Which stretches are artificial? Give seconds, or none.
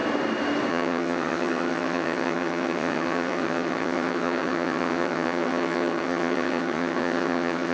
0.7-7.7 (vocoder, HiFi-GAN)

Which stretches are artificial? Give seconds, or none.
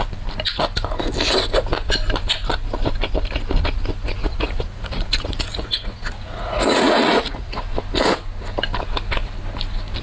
4.2-7.6 (vocoder, Vocos)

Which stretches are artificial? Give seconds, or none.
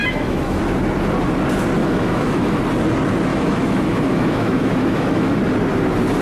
0.0-0.6 (autoencoder, DAC-VAE); 1.8-2.6; 3.3-5.4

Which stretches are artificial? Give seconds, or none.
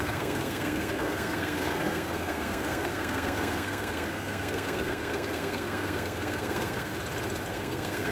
0.0-6.9 (codec, SNAC); 7.5-8.1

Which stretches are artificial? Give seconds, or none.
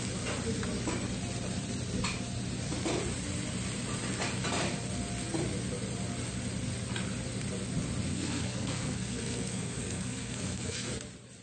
8.1-10.9 (codec, SNAC)